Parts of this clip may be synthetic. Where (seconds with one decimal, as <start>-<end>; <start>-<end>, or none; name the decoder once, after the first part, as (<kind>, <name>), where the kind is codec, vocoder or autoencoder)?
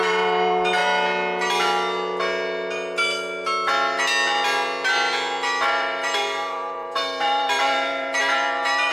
0.0-0.8 (vocoder, BigVGAN v2); 5.7-8.9